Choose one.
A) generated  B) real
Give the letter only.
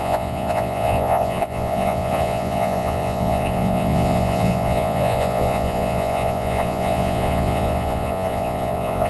A